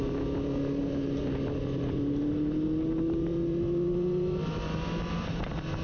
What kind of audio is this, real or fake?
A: real